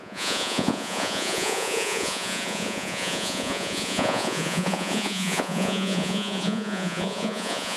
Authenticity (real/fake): fake